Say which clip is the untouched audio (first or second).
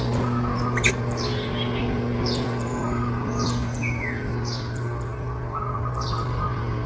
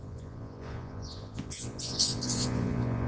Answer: first